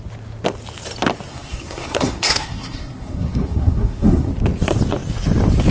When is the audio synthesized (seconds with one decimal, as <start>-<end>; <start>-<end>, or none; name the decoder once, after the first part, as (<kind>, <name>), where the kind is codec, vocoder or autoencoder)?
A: 1.3-4.3 (codec, SNAC)

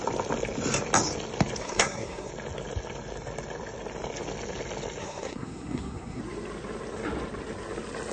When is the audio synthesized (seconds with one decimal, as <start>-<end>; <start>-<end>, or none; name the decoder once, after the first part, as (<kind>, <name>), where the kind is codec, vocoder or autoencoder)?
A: 1.6-2.3 (codec, SNAC); 5.0-6.2

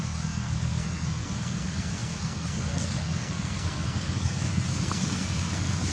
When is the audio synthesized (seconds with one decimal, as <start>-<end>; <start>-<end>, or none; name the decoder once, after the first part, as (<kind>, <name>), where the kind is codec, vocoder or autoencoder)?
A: 0.0-5.9 (codec, SNAC)